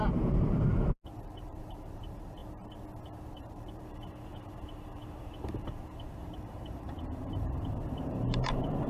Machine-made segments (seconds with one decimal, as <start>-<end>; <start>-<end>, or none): 0.0-2.4; 3.3-8.9